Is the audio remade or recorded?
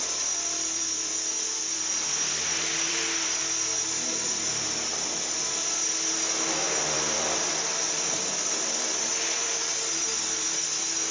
remade